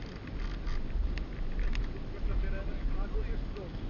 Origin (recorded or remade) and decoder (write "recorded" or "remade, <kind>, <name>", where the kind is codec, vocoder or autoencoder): recorded